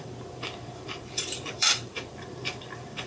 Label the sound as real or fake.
fake